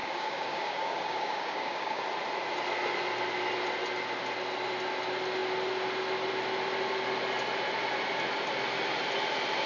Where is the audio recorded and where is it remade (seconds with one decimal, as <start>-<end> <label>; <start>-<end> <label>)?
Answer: 0.0-2.0 remade; 2.0-9.7 recorded